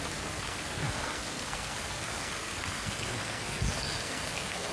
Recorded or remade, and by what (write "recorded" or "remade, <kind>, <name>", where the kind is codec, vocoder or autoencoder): remade, codec, SNAC